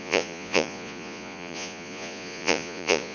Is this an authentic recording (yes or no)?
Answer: no